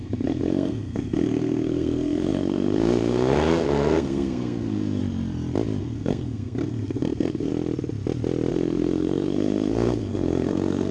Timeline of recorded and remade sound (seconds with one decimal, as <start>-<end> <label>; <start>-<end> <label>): 0.0-5.0 remade; 5.0-5.8 recorded; 5.8-7.5 remade; 7.5-8.5 recorded; 8.5-10.9 remade

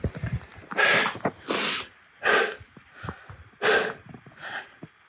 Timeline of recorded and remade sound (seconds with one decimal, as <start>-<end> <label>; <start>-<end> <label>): 0.0-5.1 recorded